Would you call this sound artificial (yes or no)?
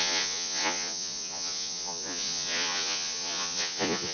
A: yes